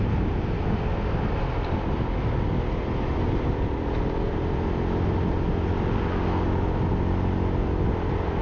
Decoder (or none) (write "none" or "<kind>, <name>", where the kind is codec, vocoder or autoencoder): none